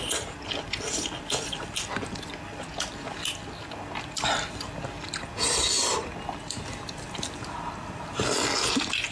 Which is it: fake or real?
real